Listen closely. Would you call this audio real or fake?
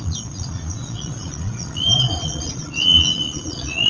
fake